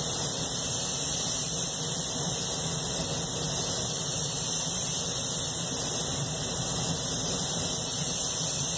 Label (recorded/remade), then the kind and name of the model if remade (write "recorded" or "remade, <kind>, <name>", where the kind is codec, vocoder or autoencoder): recorded